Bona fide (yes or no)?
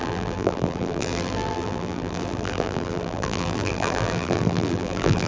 no